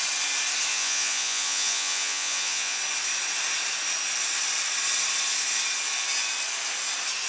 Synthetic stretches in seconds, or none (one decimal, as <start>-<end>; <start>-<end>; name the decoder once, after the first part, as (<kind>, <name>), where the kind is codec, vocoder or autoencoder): 0.7-2.8 (vocoder, Vocos)